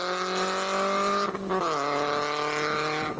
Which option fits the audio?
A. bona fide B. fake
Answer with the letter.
A